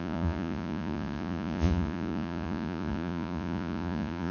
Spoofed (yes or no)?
yes